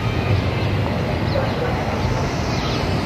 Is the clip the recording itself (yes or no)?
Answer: yes